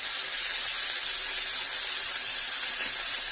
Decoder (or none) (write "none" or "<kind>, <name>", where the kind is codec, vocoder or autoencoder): none